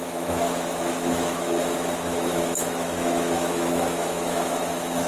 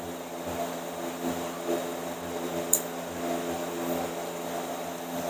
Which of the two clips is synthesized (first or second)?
first